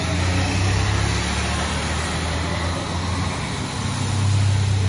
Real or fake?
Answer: real